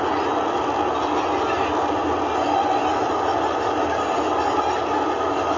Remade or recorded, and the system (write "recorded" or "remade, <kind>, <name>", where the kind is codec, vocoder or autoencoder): recorded